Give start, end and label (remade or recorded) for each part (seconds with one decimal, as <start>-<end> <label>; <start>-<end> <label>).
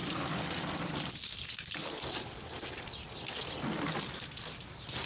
0.0-5.1 recorded